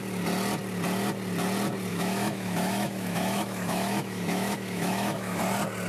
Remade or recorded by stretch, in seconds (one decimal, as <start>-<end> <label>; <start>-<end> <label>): 0.0-1.9 recorded; 1.9-5.4 remade; 5.4-5.9 recorded